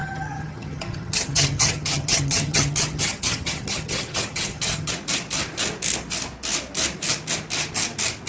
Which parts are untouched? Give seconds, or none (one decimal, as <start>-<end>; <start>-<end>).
4.9-8.3